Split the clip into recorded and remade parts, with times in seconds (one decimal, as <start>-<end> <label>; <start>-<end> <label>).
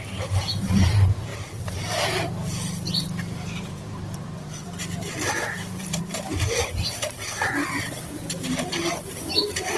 0.0-9.8 remade